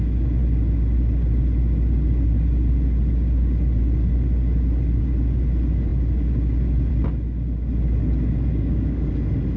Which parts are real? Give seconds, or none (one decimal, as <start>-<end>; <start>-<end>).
0.0-8.5; 9.1-9.6